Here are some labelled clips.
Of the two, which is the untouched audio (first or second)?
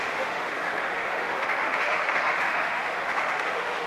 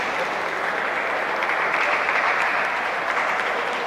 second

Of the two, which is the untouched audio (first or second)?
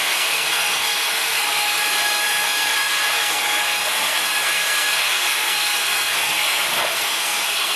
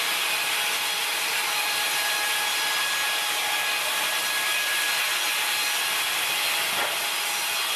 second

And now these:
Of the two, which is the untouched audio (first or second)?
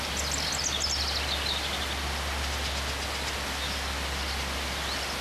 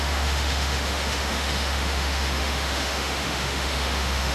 first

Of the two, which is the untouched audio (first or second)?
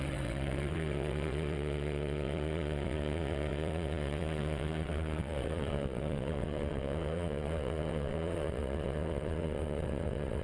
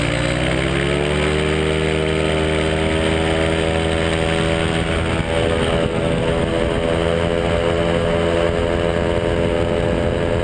second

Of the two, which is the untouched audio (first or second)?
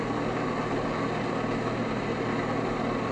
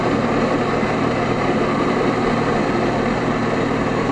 first